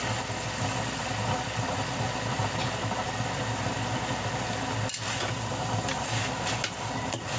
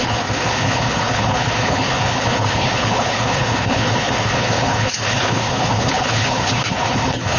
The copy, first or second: second